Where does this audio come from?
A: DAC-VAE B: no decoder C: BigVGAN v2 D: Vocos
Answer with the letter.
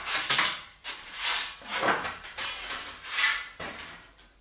C